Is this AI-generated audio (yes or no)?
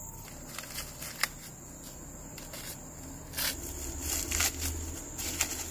no